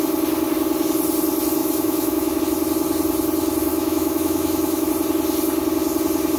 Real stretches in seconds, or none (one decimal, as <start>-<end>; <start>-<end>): 0.0-1.6; 2.4-3.7; 4.9-6.4